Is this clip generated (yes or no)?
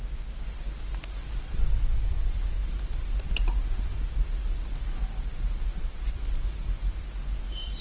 yes